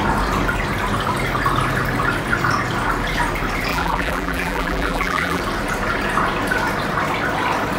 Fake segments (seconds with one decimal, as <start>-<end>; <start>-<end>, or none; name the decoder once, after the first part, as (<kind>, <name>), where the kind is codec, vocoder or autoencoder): 3.7-5.4 (vocoder, BigVGAN v2)